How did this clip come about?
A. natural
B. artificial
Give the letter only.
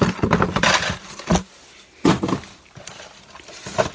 A